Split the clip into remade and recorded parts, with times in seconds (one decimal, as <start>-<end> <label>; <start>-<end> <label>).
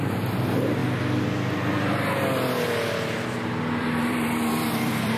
0.0-0.8 remade; 0.8-3.8 recorded; 3.8-5.2 remade